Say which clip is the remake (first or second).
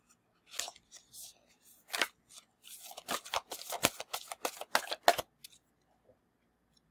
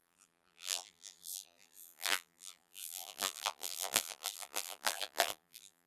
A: second